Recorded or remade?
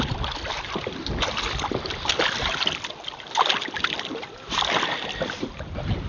recorded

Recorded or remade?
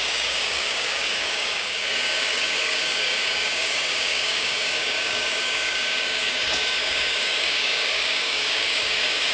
remade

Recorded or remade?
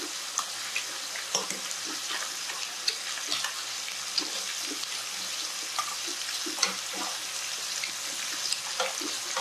recorded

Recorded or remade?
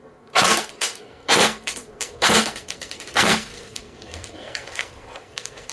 remade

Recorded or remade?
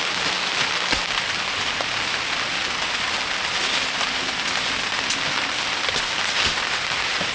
recorded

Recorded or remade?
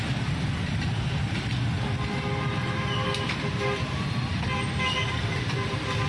recorded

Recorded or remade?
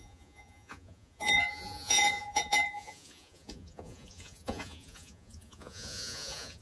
remade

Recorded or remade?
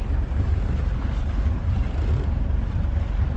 recorded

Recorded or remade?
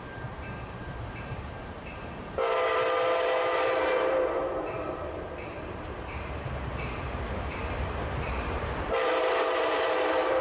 remade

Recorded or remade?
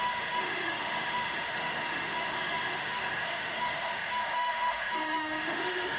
remade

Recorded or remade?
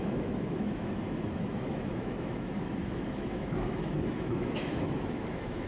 remade